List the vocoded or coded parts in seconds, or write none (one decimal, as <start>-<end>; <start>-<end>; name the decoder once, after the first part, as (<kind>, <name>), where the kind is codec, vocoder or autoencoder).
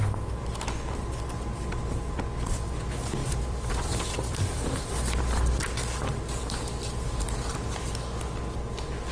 3.2-5.2 (vocoder, BigVGAN v2)